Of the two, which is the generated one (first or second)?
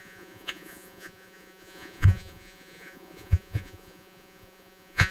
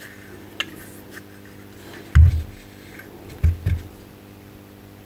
first